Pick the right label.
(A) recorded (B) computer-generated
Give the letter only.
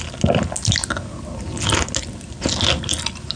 A